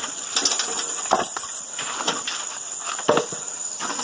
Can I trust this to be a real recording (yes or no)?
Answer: yes